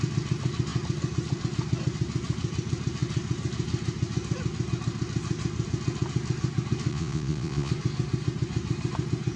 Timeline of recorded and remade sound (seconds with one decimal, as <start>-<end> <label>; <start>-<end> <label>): 0.0-6.9 recorded; 6.9-7.7 remade; 7.7-9.4 recorded